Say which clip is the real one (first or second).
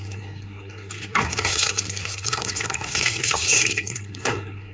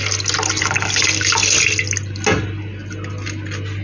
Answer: second